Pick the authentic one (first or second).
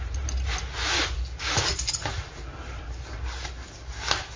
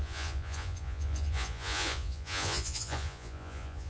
first